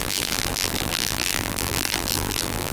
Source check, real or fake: fake